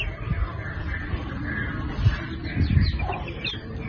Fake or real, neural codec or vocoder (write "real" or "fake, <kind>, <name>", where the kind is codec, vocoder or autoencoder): fake, vocoder, BigVGAN v2